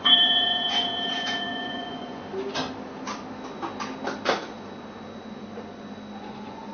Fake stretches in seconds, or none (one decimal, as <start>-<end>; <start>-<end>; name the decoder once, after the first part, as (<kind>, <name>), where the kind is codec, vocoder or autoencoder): 0.0-2.2 (vocoder, Vocos); 6.2-6.7